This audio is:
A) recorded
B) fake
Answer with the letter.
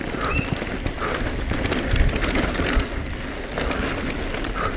A